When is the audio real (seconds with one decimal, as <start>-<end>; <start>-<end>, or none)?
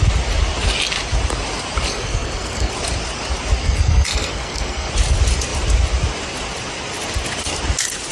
0.0-1.9; 2.7-3.6; 4.9-8.1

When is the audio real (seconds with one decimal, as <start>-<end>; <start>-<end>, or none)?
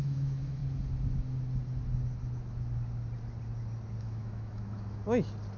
0.6-4.0; 5.0-5.6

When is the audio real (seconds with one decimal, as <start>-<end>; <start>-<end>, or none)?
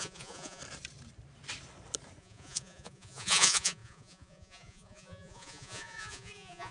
0.6-2.2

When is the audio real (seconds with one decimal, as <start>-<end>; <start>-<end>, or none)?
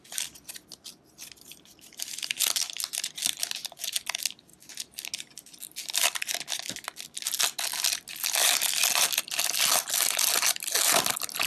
0.0-11.5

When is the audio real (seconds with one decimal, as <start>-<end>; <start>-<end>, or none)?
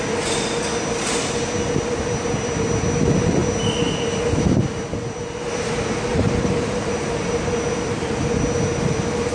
0.0-6.1; 6.9-9.3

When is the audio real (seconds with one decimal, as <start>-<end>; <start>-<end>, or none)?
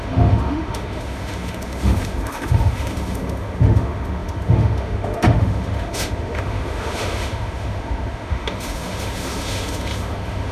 none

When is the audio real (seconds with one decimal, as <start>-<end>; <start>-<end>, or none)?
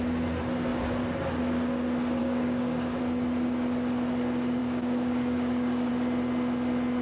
0.0-2.2; 3.0-4.6; 5.9-7.0